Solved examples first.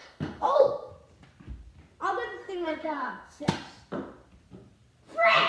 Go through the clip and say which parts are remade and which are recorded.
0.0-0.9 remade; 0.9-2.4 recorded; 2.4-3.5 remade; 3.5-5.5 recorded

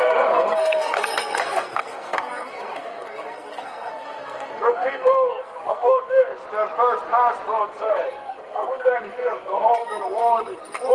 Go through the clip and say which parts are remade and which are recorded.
0.0-6.3 remade; 6.3-7.6 recorded; 7.6-10.9 remade

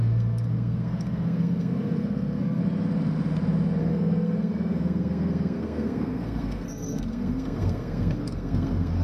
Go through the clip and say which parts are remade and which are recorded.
0.0-2.6 remade; 2.6-3.8 recorded; 3.8-9.0 remade

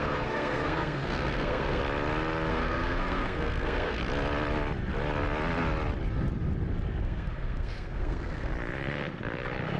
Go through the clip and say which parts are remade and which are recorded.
0.0-1.8 remade; 1.8-2.5 recorded; 2.5-4.0 remade; 4.0-7.0 recorded; 7.0-8.5 remade; 8.5-9.8 recorded